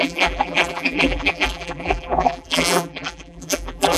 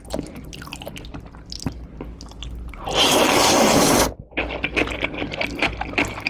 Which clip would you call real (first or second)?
second